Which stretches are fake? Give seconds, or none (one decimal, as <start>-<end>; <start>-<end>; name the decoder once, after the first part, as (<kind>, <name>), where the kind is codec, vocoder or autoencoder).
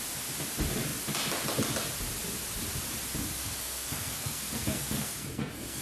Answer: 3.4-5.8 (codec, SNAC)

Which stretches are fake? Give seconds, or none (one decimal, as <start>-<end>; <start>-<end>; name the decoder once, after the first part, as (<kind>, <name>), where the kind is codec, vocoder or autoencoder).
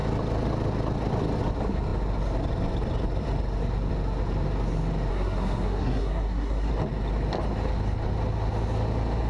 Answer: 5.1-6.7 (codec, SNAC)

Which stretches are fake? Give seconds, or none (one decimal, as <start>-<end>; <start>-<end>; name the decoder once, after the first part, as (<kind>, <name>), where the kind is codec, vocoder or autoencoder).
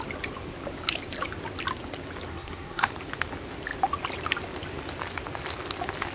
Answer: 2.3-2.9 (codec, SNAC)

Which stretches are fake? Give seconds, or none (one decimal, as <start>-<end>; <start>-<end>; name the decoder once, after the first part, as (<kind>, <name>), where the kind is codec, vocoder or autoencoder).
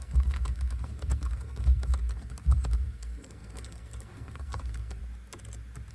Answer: 0.0-5.0 (codec, SNAC)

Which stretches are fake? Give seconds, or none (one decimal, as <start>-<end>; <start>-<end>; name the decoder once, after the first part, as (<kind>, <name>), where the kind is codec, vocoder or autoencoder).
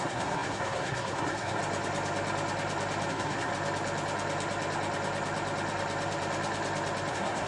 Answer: 0.0-1.6 (codec, SNAC); 3.1-3.5; 7.1-7.5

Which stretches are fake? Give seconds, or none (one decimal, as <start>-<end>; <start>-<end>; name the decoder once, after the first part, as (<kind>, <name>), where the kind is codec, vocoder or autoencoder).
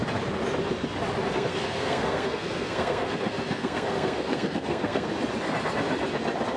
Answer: 1.3-5.1 (codec, SNAC)